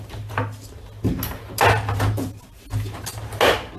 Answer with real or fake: real